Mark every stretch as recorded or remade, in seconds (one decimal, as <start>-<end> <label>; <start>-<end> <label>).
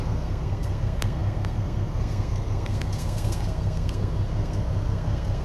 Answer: 0.0-5.4 remade